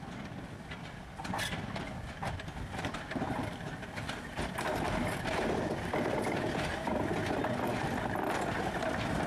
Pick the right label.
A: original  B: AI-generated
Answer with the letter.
A